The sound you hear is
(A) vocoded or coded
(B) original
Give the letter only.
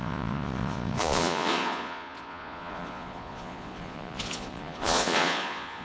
A